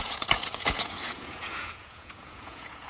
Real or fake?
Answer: fake